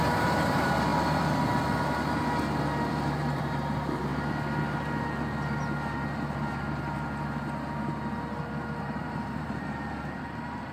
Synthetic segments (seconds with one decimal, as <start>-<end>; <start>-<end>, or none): 0.0-0.9; 2.9-4.1; 8.8-10.7